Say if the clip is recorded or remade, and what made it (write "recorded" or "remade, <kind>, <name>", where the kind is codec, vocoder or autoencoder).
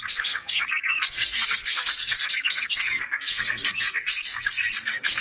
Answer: remade, codec, SNAC